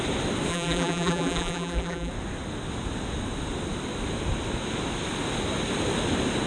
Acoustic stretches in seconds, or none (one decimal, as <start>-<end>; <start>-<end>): 0.0-0.5; 2.1-6.5

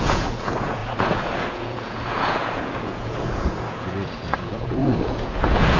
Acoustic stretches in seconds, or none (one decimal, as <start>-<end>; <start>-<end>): none

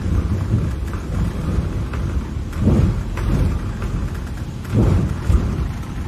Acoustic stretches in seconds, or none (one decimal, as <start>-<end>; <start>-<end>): 1.5-5.2

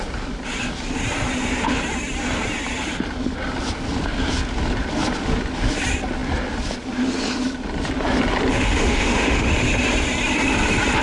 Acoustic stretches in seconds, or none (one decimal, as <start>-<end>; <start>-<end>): 0.0-8.5; 9.5-11.0

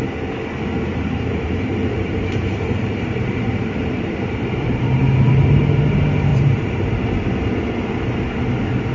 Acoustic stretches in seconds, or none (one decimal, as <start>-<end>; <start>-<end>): 0.0-0.9; 5.6-6.3; 7.0-8.9

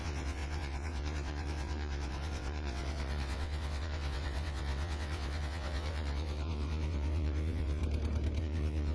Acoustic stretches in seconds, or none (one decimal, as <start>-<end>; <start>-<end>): 7.8-8.4

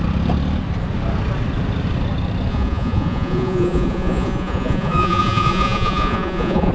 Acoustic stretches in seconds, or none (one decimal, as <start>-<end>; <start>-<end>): 0.0-2.5